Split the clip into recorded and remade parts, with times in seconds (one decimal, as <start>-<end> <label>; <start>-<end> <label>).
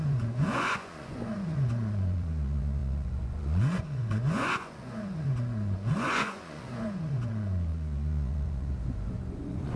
0.0-9.8 remade